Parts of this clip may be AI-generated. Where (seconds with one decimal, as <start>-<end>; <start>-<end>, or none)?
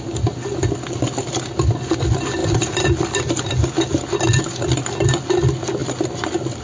2.4-3.4; 5.8-6.6